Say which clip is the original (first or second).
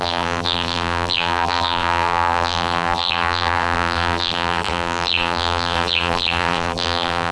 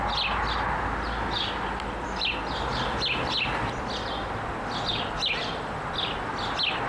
second